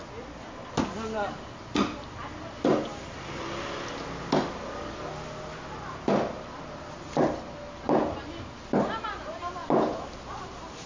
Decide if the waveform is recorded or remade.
recorded